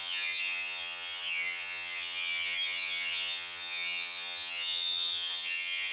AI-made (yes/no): yes